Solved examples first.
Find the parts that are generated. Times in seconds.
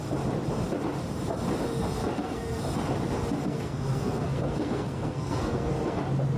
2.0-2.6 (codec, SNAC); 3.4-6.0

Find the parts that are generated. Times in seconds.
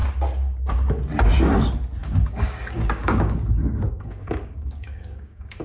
2.0-5.6 (codec, DAC)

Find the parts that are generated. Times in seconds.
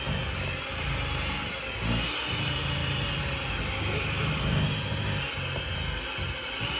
none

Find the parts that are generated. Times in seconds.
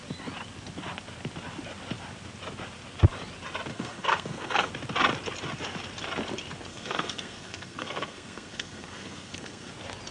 3.7-4.7 (codec, SNAC); 6.7-9.7